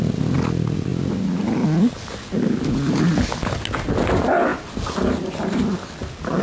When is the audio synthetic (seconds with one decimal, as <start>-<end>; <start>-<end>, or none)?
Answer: none